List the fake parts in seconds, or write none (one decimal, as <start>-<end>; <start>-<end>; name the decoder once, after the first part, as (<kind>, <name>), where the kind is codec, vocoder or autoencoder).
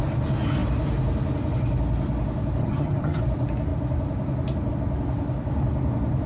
2.6-3.2 (vocoder, HiFi-GAN)